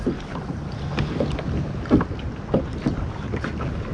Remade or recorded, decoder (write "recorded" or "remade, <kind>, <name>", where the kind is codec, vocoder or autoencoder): recorded